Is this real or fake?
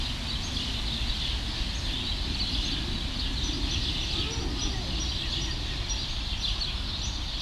real